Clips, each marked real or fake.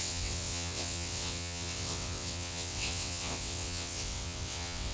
fake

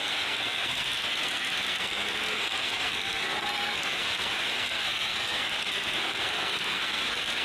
fake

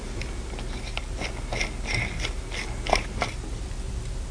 real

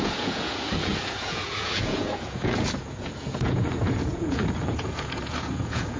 fake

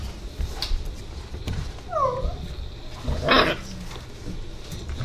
real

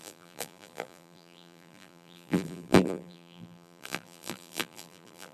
fake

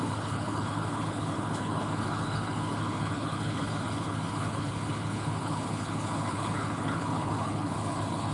fake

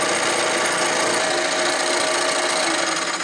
real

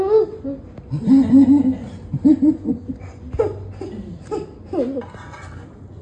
real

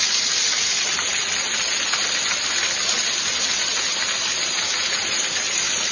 real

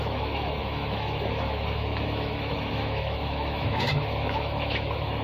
fake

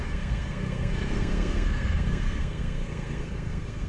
fake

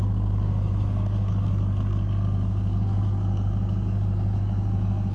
fake